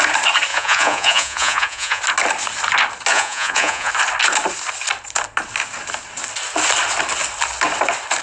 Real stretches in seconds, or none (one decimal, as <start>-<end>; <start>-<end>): 0.0-0.5; 2.0-3.1; 3.9-8.2